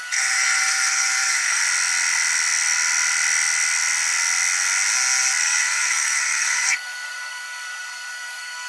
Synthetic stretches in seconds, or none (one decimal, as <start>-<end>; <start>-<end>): 0.0-1.6; 5.4-8.7